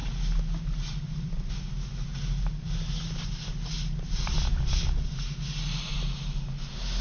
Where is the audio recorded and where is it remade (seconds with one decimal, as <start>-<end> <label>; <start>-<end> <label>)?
0.0-7.0 recorded